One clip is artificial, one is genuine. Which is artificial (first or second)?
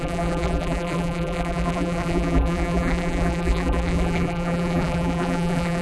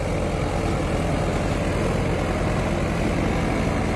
first